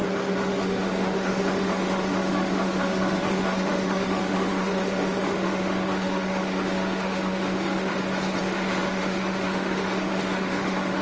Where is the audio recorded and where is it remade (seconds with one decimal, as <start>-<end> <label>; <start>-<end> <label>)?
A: 0.0-0.6 recorded; 0.6-7.9 remade; 7.9-8.4 recorded; 8.4-11.0 remade